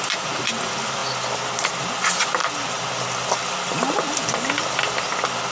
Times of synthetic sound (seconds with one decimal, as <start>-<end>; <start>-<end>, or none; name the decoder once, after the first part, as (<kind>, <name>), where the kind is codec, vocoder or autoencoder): none